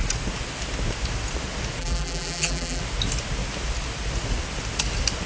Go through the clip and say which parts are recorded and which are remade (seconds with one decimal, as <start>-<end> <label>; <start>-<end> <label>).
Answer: 0.0-1.8 recorded; 1.8-2.8 remade; 2.8-5.3 recorded